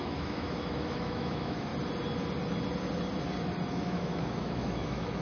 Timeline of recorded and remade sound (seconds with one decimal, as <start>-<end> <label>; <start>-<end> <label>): 0.0-1.7 remade; 1.7-3.7 recorded; 3.7-5.2 remade